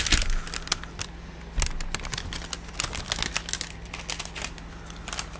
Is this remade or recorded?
recorded